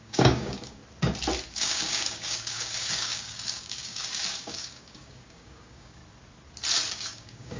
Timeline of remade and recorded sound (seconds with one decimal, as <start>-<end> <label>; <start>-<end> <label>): 0.0-0.8 remade; 0.8-1.5 recorded; 1.5-6.0 remade; 6.0-6.9 recorded; 6.9-7.6 remade